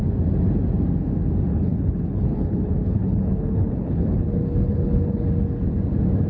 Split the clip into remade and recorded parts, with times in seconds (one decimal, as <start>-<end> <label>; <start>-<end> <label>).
0.0-1.5 recorded; 1.5-5.3 remade; 5.3-6.3 recorded